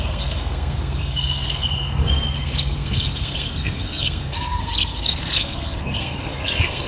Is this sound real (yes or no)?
no